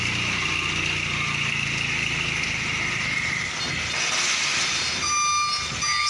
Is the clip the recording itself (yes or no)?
yes